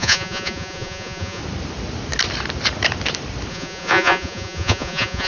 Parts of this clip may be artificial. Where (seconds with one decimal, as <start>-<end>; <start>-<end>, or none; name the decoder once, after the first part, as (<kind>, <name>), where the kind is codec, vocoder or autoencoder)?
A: 0.0-1.4 (vocoder, Vocos); 3.5-5.3